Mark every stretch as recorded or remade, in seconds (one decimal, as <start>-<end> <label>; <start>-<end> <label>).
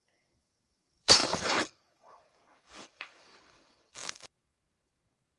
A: 0.0-5.4 remade